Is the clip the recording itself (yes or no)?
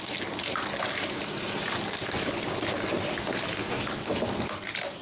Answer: yes